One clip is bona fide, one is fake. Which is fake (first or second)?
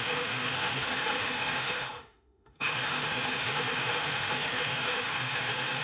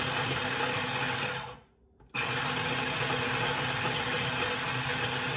first